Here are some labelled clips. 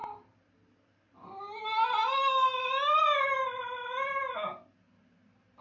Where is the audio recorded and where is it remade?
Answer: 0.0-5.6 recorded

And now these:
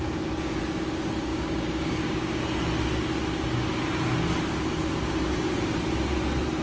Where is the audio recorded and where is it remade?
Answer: 0.0-1.3 recorded; 1.3-2.4 remade; 2.4-6.6 recorded